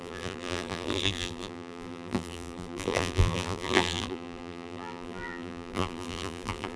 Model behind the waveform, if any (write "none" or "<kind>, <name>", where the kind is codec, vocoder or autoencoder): vocoder, BigVGAN v2